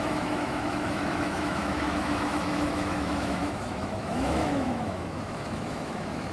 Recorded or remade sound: remade